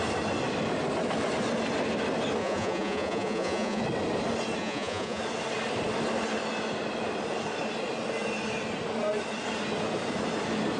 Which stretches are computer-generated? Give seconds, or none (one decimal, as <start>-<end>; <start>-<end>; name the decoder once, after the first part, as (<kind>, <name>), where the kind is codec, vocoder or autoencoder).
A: 2.4-3.8 (vocoder, Vocos); 4.6-5.2